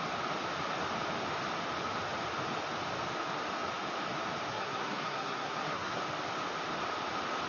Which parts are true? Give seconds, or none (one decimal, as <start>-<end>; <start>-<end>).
0.0-4.5; 6.0-7.5